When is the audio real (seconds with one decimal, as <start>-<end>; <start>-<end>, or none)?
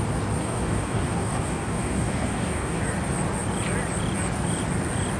0.0-0.4; 2.8-5.2